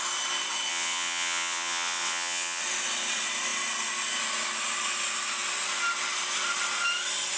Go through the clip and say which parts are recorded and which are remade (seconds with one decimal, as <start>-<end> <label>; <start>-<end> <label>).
0.0-0.7 recorded; 0.7-2.6 remade; 2.6-7.4 recorded

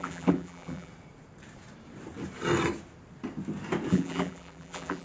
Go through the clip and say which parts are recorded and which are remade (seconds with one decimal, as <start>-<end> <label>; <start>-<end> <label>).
0.0-0.9 remade; 0.9-3.9 recorded; 3.9-5.0 remade

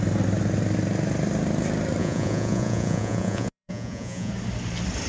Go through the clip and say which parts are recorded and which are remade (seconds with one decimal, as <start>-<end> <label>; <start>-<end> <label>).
0.0-2.0 recorded; 2.0-4.3 remade; 4.3-5.1 recorded

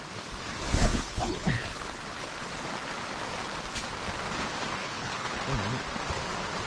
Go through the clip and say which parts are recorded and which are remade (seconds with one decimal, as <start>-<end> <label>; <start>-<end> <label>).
0.0-0.9 recorded; 0.9-2.4 remade; 2.4-4.8 recorded; 4.8-5.4 remade; 5.4-6.7 recorded